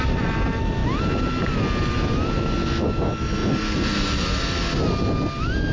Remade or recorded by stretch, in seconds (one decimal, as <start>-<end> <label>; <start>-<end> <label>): 0.0-5.7 recorded